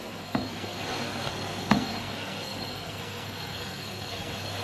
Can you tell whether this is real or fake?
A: fake